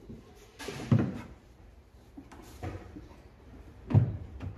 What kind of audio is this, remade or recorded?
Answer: remade